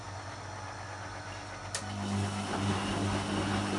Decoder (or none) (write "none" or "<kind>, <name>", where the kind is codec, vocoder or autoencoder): none